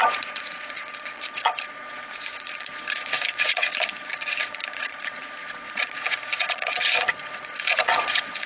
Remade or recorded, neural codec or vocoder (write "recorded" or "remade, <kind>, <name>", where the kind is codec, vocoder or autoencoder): remade, vocoder, Vocos